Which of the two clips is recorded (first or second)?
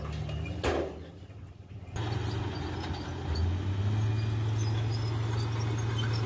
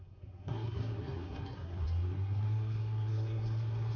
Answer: first